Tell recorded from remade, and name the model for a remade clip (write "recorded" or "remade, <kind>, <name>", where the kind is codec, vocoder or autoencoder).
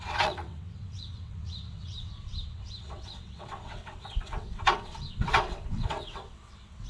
remade, vocoder, WaveNeXt